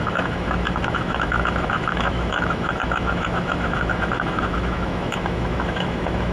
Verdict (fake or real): fake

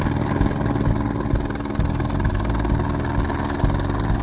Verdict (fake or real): real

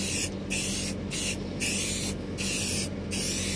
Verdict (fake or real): real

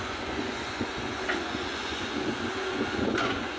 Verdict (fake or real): fake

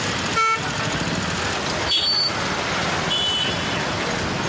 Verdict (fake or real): real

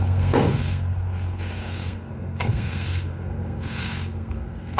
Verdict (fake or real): fake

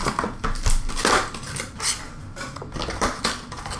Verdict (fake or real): real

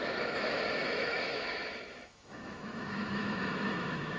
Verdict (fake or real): fake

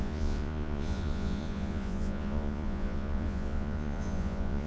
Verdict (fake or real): fake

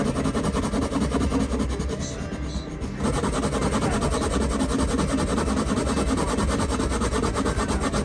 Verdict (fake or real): real